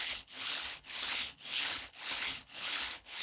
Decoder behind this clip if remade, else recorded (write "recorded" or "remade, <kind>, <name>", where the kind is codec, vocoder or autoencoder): remade, codec, HILCodec